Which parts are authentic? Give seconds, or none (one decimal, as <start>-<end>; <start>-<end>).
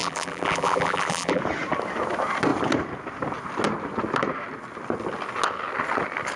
1.4-6.4